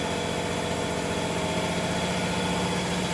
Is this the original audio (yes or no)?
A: yes